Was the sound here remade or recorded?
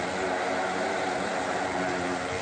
recorded